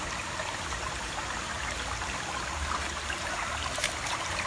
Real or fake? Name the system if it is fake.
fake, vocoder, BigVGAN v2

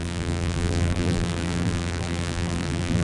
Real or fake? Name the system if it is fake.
fake, vocoder, BigVGAN v2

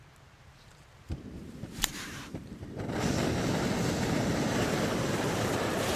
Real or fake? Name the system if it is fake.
fake, vocoder, BigVGAN v2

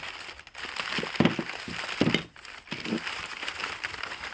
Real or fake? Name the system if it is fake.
real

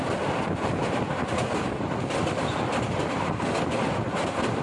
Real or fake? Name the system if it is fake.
real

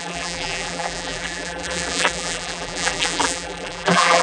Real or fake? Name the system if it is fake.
fake, vocoder, BigVGAN v2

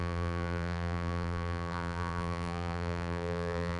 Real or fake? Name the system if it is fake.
fake, vocoder, BigVGAN v2